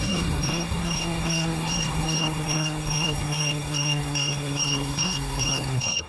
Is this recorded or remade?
remade